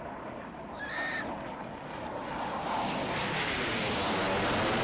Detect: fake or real real